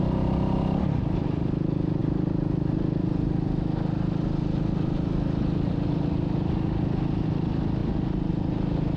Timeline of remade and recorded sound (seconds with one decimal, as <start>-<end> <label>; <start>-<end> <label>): 0.0-9.0 recorded